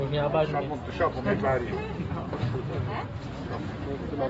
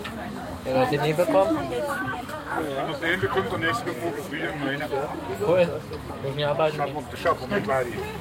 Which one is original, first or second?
first